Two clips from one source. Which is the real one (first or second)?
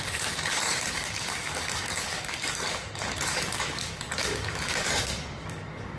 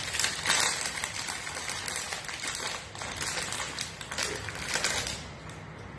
second